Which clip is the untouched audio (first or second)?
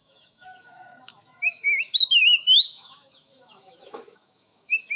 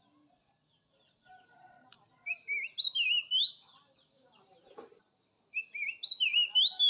second